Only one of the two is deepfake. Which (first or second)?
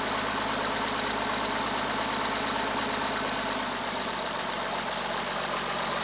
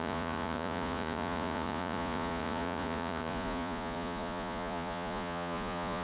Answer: second